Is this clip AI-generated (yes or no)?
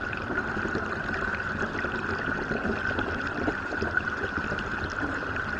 yes